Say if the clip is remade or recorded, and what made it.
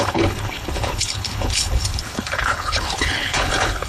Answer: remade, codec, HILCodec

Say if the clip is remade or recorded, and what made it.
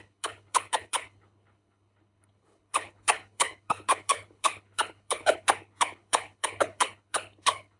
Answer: remade, codec, HILCodec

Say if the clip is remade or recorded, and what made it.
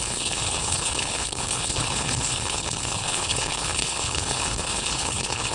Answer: remade, codec, HILCodec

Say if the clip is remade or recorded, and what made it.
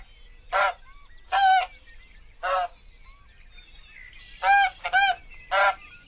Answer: recorded